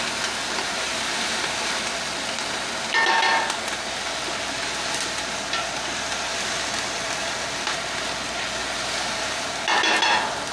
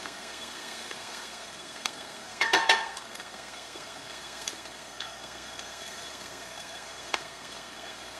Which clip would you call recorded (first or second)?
first